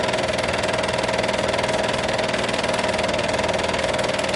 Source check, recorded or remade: recorded